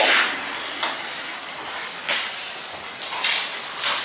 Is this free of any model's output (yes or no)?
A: yes